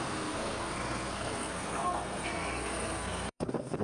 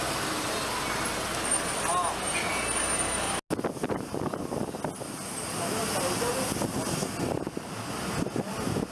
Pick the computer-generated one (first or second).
first